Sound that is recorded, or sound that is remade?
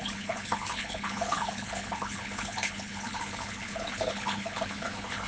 remade